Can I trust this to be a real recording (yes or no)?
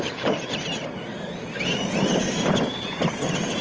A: yes